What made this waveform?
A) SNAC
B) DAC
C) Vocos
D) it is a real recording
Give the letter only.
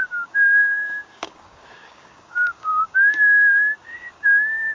B